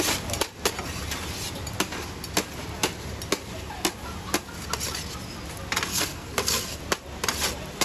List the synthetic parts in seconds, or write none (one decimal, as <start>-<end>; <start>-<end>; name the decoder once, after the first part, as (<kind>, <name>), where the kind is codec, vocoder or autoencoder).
5.9-6.8 (codec, SNAC)